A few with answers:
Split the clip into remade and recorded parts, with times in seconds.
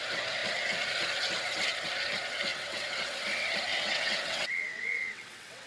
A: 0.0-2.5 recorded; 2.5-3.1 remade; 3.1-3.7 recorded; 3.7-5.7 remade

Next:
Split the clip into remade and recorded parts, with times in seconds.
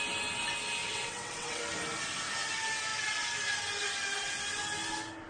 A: 0.0-0.8 recorded; 0.8-1.6 remade; 1.6-5.3 recorded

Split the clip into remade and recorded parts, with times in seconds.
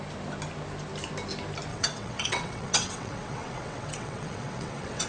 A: 0.0-1.7 recorded; 1.7-5.1 remade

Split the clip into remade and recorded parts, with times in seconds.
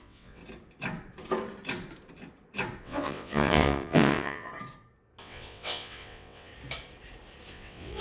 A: 0.0-0.4 remade; 0.4-2.8 recorded; 2.8-4.5 remade; 4.5-5.2 recorded; 5.2-6.5 remade; 6.5-7.5 recorded; 7.5-8.0 remade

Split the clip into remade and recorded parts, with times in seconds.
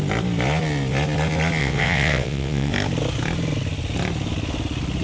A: 0.0-1.6 recorded; 1.6-2.7 remade; 2.7-5.0 recorded